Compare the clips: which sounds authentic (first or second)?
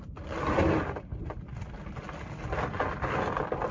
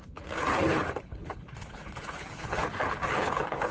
first